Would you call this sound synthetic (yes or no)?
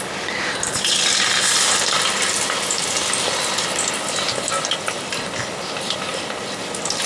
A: no